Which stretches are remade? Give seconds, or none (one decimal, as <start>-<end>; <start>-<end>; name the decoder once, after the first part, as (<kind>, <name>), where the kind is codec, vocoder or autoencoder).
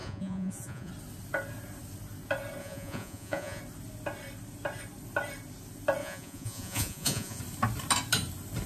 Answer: 0.0-0.9 (vocoder, Vocos); 2.6-3.6; 6.0-7.4